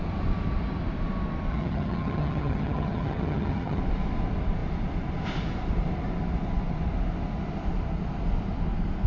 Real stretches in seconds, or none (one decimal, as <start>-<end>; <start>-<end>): 0.0-1.5; 3.8-9.1